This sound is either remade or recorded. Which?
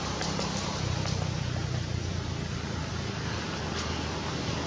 recorded